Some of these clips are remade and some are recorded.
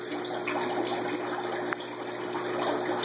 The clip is recorded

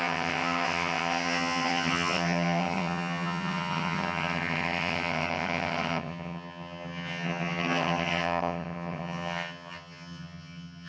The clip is remade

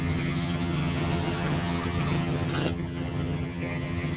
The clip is remade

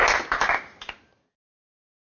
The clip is recorded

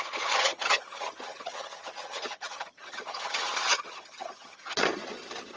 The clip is remade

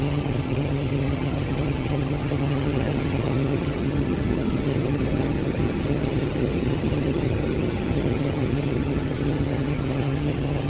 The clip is remade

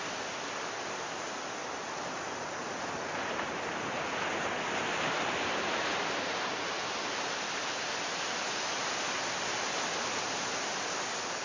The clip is recorded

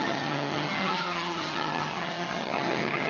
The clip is remade